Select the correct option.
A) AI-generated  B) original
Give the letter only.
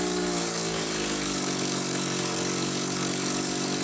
A